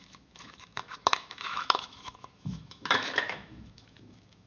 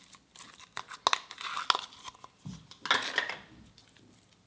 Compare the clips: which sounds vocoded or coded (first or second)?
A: first